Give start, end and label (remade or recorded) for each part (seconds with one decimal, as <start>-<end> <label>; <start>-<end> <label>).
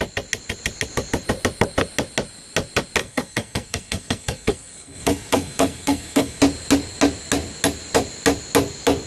0.0-3.0 recorded; 3.0-6.4 remade; 6.4-9.1 recorded